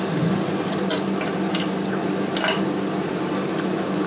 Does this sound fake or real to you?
real